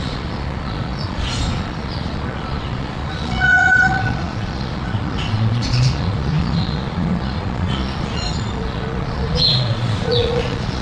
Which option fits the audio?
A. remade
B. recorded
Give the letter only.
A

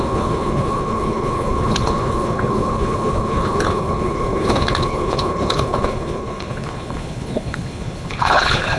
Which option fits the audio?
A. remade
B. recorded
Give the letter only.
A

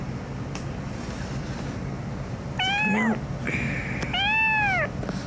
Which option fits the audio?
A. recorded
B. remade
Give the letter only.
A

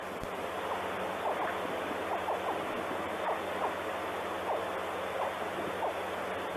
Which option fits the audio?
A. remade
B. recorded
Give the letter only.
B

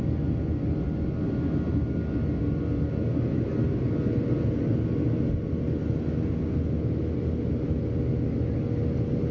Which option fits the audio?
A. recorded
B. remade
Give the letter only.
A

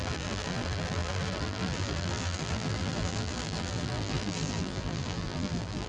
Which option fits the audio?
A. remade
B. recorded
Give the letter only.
A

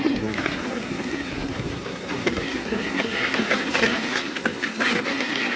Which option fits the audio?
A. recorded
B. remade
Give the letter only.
B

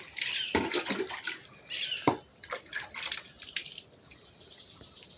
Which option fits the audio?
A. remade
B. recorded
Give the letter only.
B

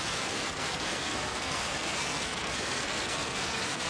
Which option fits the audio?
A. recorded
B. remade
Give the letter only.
B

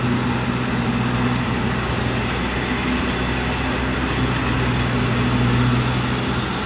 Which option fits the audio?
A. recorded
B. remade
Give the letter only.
A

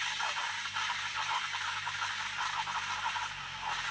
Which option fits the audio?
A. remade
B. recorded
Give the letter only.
B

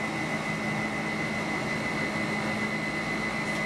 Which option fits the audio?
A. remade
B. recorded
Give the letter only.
B